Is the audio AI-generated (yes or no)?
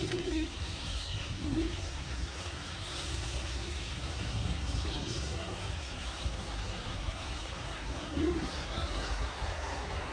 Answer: yes